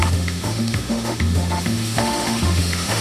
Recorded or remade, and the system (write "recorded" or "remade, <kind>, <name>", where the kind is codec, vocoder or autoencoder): remade, autoencoder, DAC-VAE